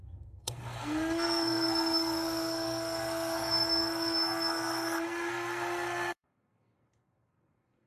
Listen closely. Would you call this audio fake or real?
fake